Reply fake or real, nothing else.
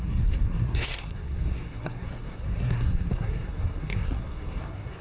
fake